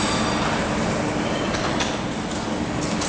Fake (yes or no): no